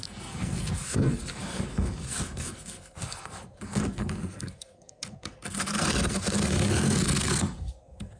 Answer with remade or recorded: remade